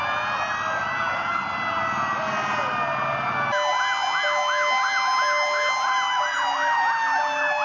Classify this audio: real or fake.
real